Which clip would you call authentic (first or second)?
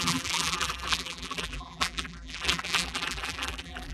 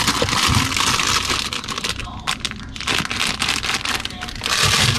second